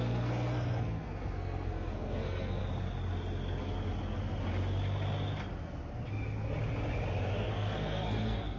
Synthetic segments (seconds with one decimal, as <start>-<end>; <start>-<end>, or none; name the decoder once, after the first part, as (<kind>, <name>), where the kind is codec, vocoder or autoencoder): 0.0-2.6 (codec, SNAC); 7.3-8.6